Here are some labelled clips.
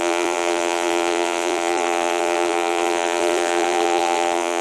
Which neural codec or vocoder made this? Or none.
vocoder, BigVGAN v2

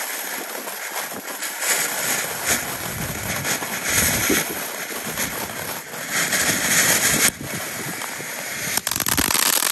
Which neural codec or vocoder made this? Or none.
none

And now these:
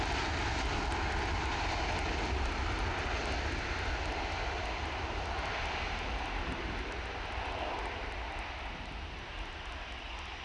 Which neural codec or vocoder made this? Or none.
none